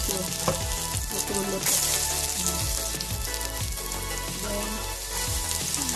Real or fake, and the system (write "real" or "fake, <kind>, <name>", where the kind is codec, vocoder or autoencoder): real